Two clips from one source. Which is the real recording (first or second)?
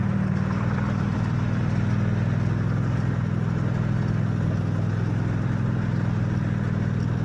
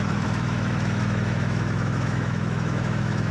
first